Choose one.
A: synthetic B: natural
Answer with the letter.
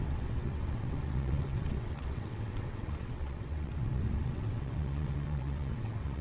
A